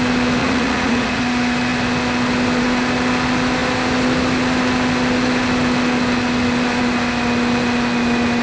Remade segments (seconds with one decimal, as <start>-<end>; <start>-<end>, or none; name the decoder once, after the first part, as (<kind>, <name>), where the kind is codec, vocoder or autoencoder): 0.4-1.2 (vocoder, Vocos)

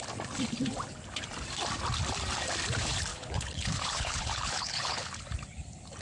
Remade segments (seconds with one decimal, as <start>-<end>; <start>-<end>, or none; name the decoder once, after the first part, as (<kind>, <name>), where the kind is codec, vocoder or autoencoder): 3.1-5.1 (codec, HILCodec)

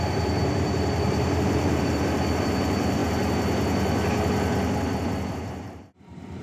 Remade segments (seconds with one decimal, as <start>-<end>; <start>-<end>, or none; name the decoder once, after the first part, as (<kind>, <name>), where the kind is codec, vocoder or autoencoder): 0.0-3.0 (vocoder, BigVGAN v2); 5.3-6.4

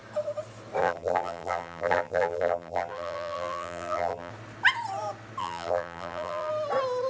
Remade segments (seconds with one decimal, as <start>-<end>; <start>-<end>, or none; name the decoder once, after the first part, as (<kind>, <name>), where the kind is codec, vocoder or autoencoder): 0.8-4.3 (vocoder, BigVGAN v2); 5.4-6.5

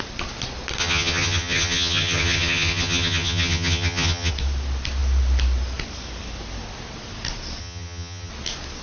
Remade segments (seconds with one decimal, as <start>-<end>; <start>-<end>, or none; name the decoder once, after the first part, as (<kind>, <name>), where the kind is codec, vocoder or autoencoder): 0.8-4.3 (vocoder, HiFi-GAN); 7.6-8.3